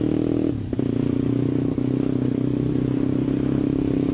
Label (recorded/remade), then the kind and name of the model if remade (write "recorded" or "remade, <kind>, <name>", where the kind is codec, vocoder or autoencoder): recorded